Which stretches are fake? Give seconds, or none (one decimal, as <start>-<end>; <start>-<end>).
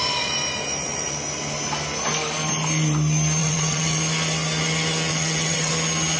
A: 3.4-4.0; 5.1-5.7